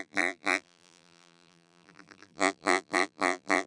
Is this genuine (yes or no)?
no